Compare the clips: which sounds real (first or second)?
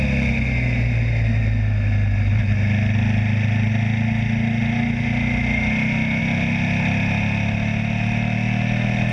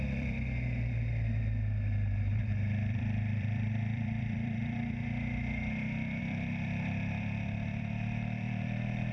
first